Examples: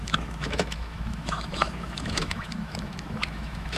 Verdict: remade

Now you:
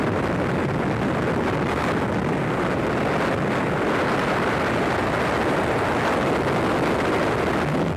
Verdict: recorded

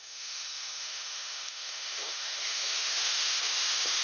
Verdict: remade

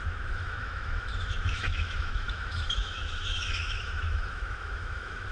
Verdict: remade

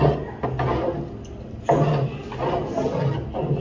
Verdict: recorded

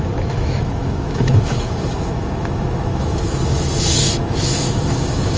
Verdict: remade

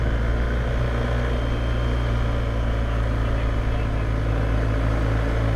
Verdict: recorded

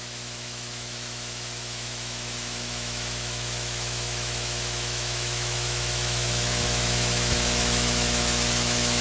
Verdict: remade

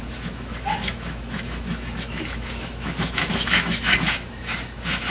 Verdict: remade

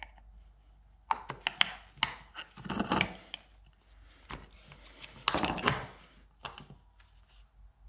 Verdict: recorded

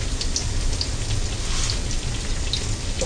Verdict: recorded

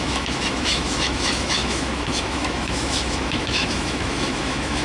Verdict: remade